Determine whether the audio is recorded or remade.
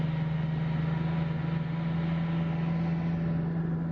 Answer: recorded